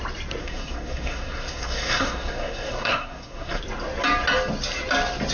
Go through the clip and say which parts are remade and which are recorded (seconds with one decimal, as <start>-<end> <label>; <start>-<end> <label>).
0.0-0.4 recorded; 0.4-3.6 remade; 3.6-5.3 recorded